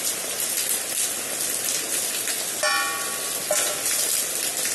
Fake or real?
real